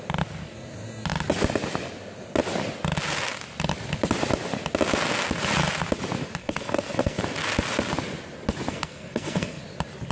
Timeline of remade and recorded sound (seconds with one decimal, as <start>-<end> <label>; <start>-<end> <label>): 0.0-6.4 recorded; 6.4-7.2 remade; 7.2-8.7 recorded; 8.7-9.6 remade; 9.6-10.1 recorded